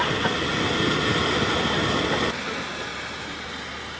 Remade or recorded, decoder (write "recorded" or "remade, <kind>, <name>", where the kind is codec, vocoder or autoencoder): recorded